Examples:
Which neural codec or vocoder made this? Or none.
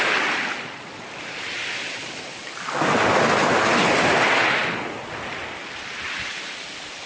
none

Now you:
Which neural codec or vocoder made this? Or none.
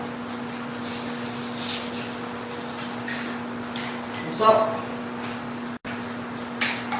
none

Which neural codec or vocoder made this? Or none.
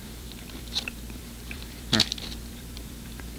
vocoder, BigVGAN v2